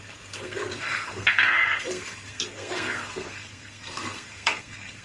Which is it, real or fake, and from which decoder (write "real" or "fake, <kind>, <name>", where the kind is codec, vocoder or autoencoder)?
fake, codec, SNAC